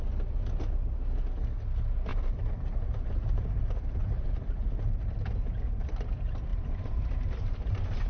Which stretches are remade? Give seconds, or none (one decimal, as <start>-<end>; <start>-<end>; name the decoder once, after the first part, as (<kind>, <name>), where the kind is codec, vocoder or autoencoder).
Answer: 2.1-6.0 (vocoder, BigVGAN v2); 6.5-8.1